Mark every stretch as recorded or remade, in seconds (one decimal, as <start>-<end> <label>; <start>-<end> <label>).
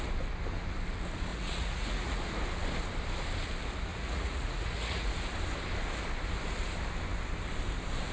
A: 0.0-1.3 recorded; 1.3-2.2 remade; 2.2-3.9 recorded; 3.9-5.1 remade; 5.1-8.1 recorded